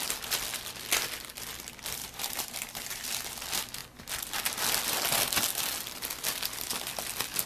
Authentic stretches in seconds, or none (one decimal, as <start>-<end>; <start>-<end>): 0.0-2.0; 3.0-7.5